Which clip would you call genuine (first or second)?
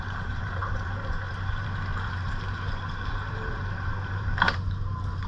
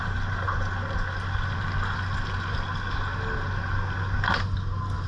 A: second